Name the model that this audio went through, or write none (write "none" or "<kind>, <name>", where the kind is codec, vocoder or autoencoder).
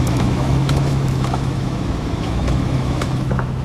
autoencoder, DAC-VAE